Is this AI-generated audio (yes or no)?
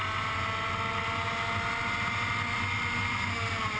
no